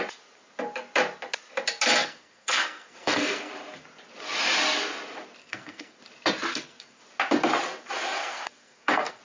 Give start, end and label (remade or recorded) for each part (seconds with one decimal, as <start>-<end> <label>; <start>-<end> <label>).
0.0-2.0 recorded; 2.0-3.5 remade; 3.5-5.4 recorded; 5.4-6.0 remade; 6.0-6.5 recorded; 6.5-7.0 remade; 7.0-8.2 recorded; 8.2-9.2 remade